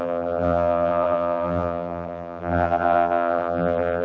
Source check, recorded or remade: remade